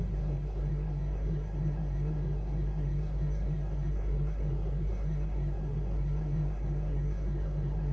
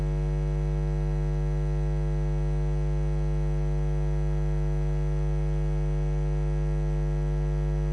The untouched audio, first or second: second